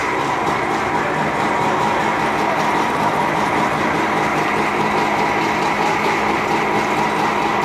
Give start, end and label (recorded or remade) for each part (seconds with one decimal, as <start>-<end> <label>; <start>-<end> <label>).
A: 0.0-4.6 remade; 4.6-7.6 recorded